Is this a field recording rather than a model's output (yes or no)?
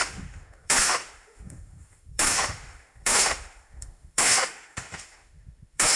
no